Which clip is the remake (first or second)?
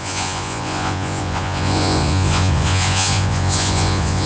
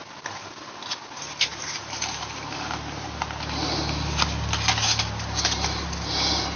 first